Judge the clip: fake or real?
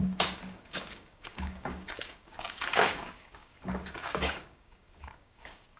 fake